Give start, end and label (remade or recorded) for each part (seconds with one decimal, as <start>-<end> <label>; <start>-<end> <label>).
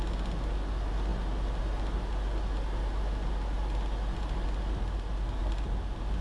0.0-6.2 recorded